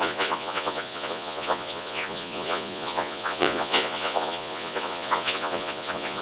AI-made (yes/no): yes